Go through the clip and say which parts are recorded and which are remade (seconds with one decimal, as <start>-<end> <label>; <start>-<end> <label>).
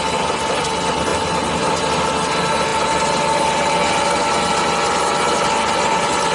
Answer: 0.0-6.3 recorded